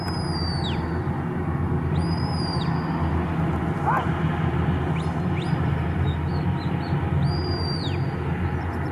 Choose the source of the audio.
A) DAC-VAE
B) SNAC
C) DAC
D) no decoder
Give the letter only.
D